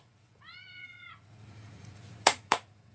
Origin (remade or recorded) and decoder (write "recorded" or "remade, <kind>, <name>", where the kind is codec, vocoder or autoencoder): remade, vocoder, Vocos